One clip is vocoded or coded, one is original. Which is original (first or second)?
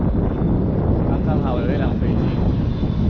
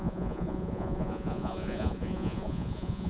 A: first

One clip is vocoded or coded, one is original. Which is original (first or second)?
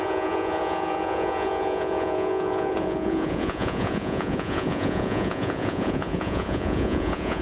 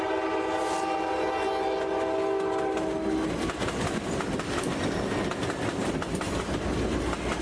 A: second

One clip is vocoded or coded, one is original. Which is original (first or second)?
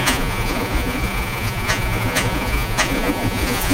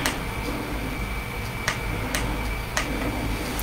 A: second